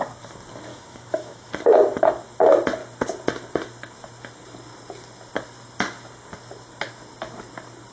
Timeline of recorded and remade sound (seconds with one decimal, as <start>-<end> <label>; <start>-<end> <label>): 0.0-0.7 recorded; 0.7-1.5 remade; 1.5-7.9 recorded